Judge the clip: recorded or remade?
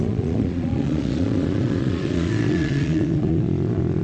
remade